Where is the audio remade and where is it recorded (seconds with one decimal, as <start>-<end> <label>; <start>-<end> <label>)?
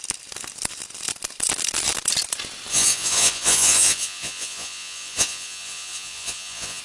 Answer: 0.0-2.7 recorded; 2.7-6.8 remade